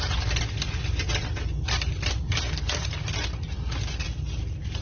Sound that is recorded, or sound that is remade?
remade